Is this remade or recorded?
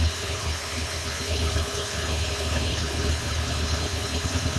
remade